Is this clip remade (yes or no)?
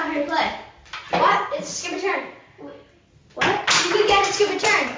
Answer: no